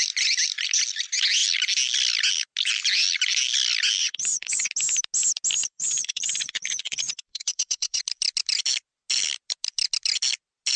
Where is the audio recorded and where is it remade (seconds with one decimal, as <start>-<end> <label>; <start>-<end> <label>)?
0.0-4.0 recorded; 4.0-4.7 remade; 4.7-5.6 recorded; 5.6-8.0 remade; 8.0-10.8 recorded